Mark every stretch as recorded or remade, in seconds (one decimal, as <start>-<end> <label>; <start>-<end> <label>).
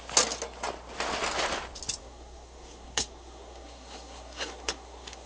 0.0-2.0 recorded; 2.0-5.3 remade